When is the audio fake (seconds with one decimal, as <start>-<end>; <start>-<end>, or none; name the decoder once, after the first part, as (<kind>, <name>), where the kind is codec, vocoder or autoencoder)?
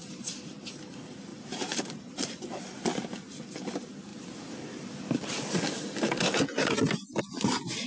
1.3-2.4 (vocoder, BigVGAN v2)